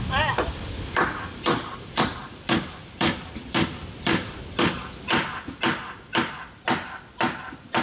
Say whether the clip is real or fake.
real